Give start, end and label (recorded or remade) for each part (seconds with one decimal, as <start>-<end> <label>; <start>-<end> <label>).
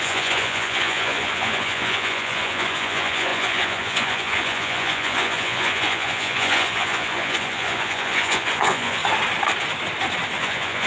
0.0-9.0 remade; 9.0-10.4 recorded; 10.4-10.9 remade